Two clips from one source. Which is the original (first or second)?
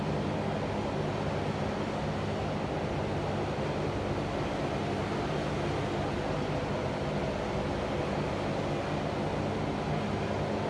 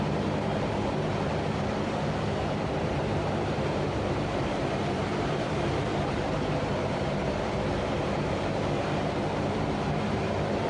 first